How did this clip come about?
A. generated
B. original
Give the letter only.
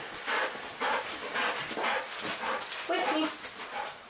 B